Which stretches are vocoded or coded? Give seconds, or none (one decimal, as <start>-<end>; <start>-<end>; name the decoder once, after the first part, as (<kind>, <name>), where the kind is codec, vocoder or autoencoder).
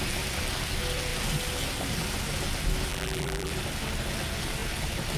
2.9-3.5 (vocoder, BigVGAN v2)